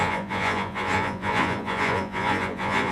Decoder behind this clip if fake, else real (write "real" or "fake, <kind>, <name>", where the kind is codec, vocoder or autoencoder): fake, vocoder, Vocos